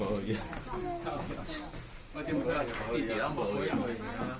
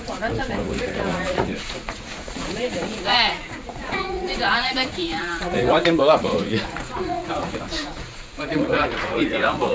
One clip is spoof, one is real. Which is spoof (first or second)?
second